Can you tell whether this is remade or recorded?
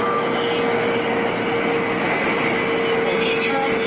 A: recorded